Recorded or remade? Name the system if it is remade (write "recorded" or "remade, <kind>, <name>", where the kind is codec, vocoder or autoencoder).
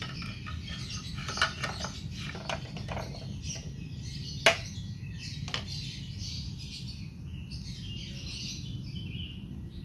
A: recorded